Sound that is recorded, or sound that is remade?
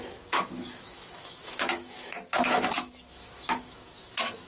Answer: remade